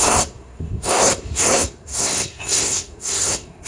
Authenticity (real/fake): fake